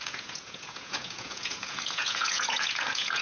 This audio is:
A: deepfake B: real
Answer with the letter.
A